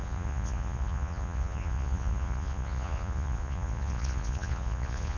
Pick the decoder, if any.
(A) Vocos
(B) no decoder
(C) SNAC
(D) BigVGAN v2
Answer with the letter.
A